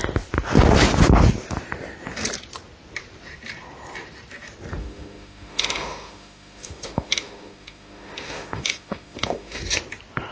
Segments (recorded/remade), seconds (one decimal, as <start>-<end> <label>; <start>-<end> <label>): 0.0-4.8 recorded; 4.8-9.6 remade; 9.6-10.3 recorded